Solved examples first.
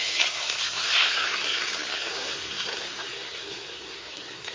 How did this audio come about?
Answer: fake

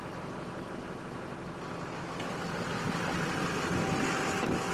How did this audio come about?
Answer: real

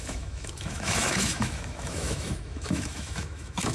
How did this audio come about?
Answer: fake